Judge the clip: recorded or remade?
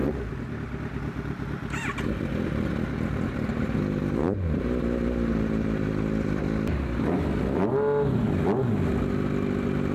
recorded